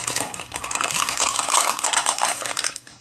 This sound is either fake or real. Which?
fake